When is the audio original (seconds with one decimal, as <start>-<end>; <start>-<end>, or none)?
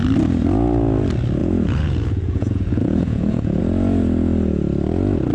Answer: 0.0-1.4; 3.6-5.3